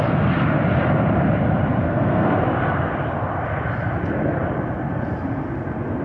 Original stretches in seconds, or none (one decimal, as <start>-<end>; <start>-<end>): 0.0-1.8; 2.4-6.0